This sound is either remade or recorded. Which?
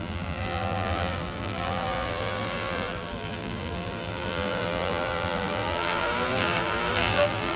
remade